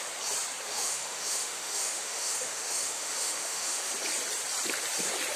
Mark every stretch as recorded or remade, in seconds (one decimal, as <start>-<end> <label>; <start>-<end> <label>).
0.0-0.7 recorded; 0.7-3.9 remade; 3.9-5.4 recorded